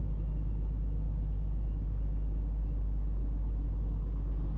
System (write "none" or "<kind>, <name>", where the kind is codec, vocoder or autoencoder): none